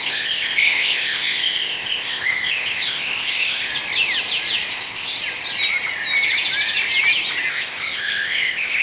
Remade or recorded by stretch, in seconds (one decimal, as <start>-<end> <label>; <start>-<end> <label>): 0.0-3.7 remade; 3.7-4.7 recorded; 4.7-5.2 remade; 5.2-7.5 recorded; 7.5-8.8 remade